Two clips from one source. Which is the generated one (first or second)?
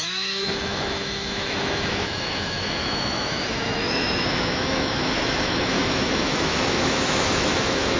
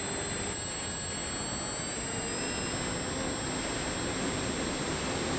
first